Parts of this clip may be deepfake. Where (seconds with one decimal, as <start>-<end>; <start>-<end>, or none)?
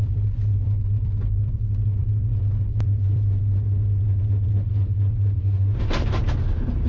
0.0-3.4